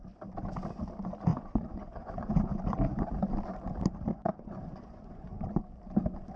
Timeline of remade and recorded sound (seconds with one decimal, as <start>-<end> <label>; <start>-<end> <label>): 0.0-1.3 recorded; 1.3-2.5 remade; 2.5-4.1 recorded; 4.1-5.6 remade; 5.6-6.4 recorded